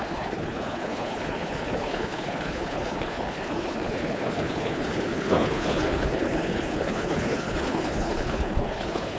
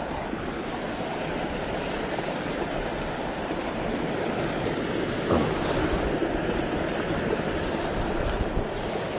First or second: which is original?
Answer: second